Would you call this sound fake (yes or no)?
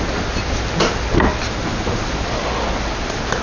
no